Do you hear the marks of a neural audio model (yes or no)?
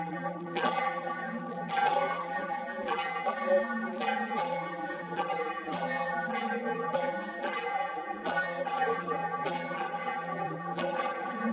yes